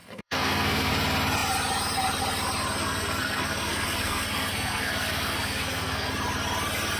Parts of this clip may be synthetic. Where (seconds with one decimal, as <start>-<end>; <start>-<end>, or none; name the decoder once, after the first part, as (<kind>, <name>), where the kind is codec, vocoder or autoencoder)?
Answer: 0.0-0.9 (codec, SNAC); 2.8-6.1